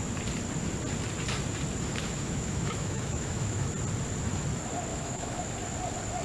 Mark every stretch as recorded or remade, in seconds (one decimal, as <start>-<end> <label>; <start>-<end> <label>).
0.0-1.9 recorded; 1.9-3.7 remade; 3.7-4.9 recorded; 4.9-5.5 remade; 5.5-6.2 recorded